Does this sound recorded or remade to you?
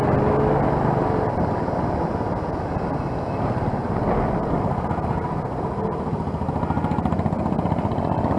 recorded